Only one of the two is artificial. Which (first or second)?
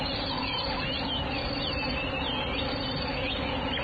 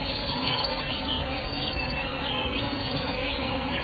second